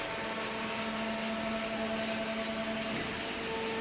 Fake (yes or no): no